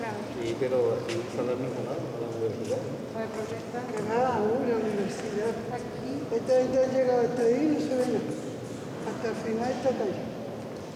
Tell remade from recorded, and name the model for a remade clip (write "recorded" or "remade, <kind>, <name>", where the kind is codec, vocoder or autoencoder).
recorded